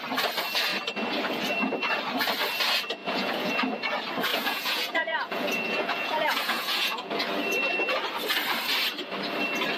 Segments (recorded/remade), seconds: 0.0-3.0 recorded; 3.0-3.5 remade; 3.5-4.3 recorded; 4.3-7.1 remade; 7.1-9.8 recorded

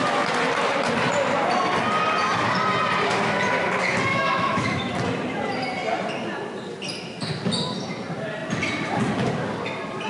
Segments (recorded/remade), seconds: 0.0-4.1 recorded; 4.1-4.9 remade; 4.9-10.1 recorded